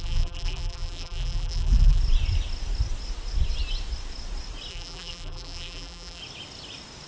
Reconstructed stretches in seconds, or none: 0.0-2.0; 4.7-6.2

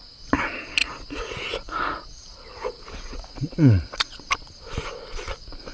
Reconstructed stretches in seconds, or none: 0.8-4.2

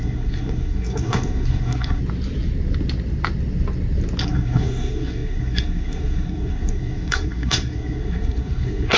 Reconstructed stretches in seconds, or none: 0.0-2.0; 4.2-9.0

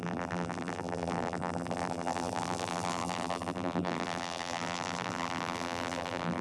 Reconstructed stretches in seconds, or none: 0.0-6.4

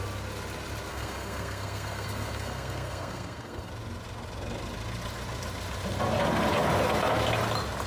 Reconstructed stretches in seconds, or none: 0.9-3.7

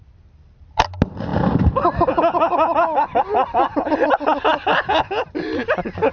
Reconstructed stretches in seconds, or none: none

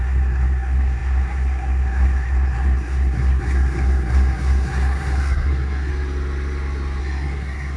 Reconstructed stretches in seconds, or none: 0.0-5.9; 7.0-7.8